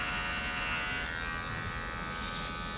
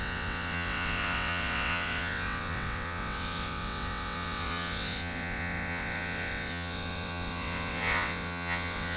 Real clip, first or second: first